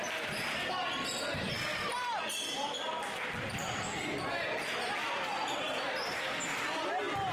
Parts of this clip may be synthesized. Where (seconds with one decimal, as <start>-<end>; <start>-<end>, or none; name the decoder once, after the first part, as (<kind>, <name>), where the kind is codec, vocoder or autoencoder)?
1.7-5.9 (vocoder, BigVGAN v2)